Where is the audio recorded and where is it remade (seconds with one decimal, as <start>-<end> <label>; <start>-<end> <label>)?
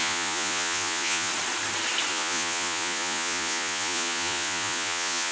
0.0-1.3 remade; 1.3-2.1 recorded; 2.1-5.3 remade